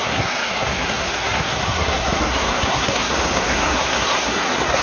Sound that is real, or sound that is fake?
fake